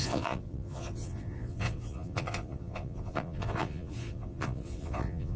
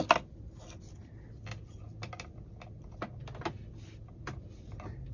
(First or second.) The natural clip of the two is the second